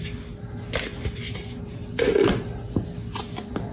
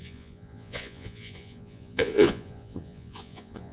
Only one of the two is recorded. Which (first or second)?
first